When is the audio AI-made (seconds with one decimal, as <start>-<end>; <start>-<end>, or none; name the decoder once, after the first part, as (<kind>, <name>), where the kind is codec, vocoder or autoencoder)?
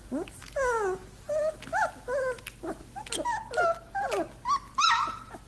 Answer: none